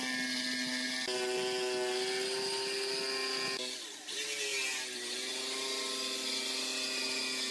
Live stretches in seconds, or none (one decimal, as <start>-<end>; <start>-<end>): 0.0-7.5